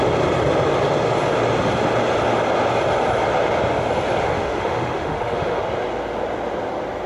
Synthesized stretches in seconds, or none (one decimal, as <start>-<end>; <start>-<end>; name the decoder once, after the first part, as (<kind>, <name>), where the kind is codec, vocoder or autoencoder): 4.2-5.6 (autoencoder, DAC-VAE)